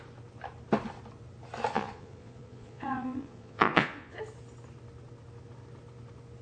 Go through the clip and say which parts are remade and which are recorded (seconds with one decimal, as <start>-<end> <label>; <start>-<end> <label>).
0.0-1.7 recorded; 1.7-4.2 remade; 4.2-6.4 recorded